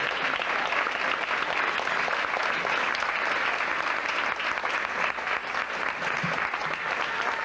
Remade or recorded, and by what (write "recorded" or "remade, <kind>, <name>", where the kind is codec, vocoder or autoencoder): recorded